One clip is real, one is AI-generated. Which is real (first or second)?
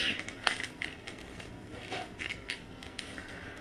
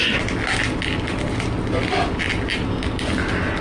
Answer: second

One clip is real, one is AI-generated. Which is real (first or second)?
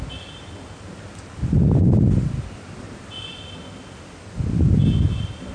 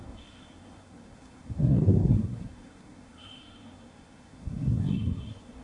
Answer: first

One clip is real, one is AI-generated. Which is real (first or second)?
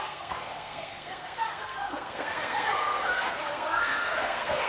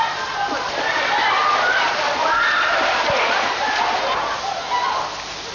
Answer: second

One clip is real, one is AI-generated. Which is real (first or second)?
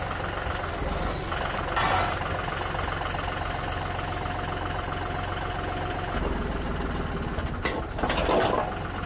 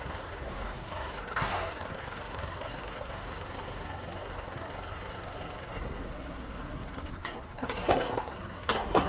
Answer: first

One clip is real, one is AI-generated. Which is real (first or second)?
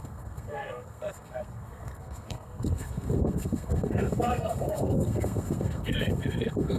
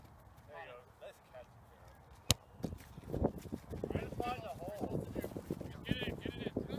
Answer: second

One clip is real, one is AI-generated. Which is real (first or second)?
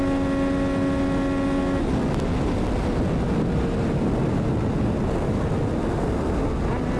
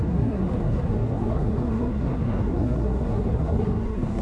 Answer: first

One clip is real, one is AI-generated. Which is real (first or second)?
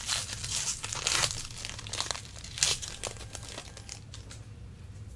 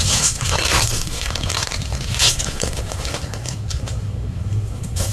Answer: first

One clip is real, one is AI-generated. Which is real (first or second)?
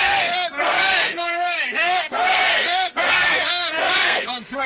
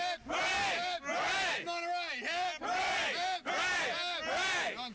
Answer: second